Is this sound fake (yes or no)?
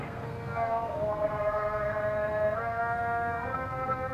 yes